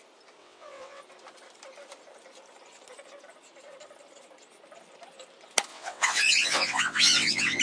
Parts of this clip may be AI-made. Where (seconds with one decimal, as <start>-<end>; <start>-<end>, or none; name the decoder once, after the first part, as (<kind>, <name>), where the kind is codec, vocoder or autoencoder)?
0.4-1.0 (vocoder, WaveNeXt); 5.7-7.6

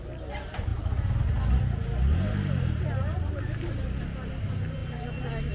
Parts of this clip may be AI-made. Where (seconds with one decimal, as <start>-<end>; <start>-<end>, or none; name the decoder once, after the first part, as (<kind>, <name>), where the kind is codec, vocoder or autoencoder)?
none

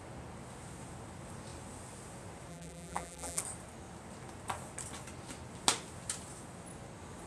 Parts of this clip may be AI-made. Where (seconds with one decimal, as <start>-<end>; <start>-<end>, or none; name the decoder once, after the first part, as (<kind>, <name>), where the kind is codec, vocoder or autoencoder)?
2.5-3.4 (vocoder, BigVGAN v2)

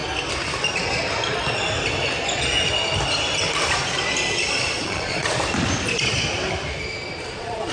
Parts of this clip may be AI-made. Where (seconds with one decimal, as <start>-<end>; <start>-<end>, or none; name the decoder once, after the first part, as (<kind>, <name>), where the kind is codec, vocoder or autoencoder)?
4.5-5.4 (vocoder, Vocos); 7.3-7.7